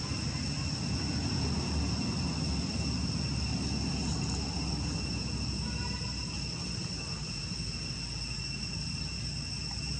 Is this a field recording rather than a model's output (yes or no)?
yes